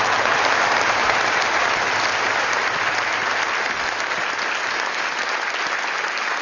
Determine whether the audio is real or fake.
real